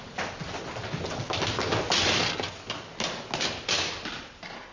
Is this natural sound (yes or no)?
yes